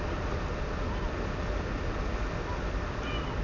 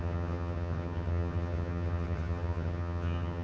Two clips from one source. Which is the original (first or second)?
first